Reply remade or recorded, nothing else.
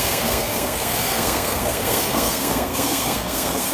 remade